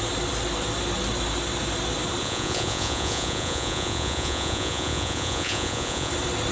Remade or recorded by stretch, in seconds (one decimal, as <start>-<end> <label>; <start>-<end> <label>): 0.0-2.2 recorded; 2.2-6.1 remade; 6.1-6.5 recorded